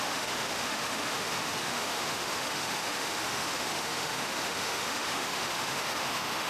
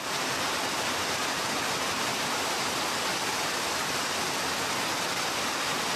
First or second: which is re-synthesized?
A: first